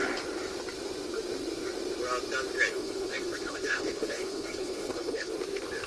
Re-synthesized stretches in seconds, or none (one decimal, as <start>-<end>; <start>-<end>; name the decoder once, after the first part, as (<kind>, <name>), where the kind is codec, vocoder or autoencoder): 2.7-5.3 (codec, HILCodec)